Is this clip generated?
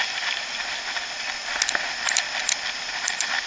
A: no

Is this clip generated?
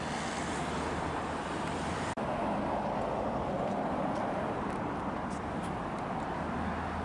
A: no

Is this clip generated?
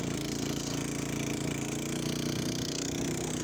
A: no